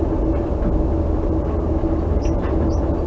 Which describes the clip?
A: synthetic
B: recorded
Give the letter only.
B